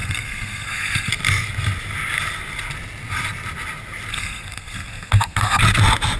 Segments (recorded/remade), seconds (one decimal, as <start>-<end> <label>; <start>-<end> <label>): 0.0-1.1 remade; 1.1-4.1 recorded; 4.1-5.6 remade; 5.6-6.2 recorded